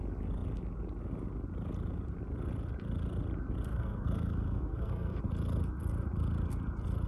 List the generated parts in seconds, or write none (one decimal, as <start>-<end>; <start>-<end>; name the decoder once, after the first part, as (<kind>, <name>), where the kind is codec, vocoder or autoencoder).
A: 3.7-5.2 (codec, SNAC)

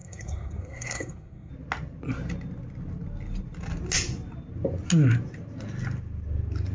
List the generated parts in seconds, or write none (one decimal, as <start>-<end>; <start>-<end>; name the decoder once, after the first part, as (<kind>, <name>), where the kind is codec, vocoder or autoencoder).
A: 0.0-1.5 (codec, SNAC)